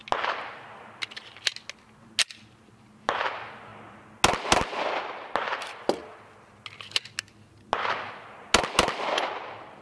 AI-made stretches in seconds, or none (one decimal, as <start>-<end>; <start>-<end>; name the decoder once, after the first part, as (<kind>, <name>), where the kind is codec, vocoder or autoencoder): none